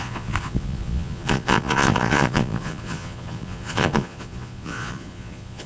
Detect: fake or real fake